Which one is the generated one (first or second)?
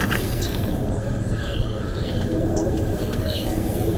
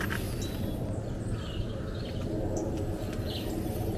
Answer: first